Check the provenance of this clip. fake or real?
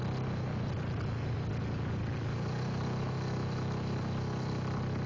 real